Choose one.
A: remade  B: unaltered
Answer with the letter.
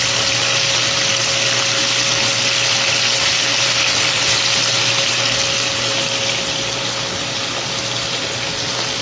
B